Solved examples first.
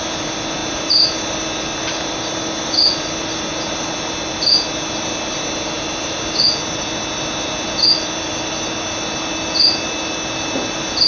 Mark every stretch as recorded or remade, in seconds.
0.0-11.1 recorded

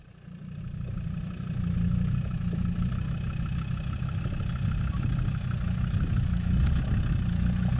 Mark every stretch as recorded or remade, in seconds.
0.0-7.8 recorded

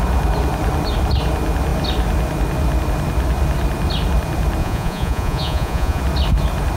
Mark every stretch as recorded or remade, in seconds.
0.0-4.6 recorded; 4.6-6.0 remade; 6.0-6.8 recorded